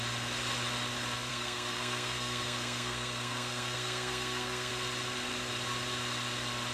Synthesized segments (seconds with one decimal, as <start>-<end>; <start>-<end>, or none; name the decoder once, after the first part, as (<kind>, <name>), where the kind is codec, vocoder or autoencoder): 1.3-4.7 (codec, SNAC)